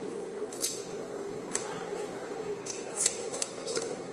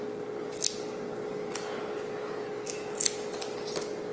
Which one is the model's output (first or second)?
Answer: first